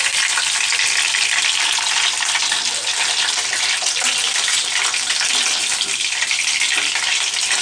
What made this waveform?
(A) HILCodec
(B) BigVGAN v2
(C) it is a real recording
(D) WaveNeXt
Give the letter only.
C